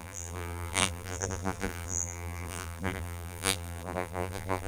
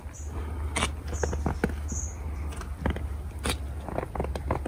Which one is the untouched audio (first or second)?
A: second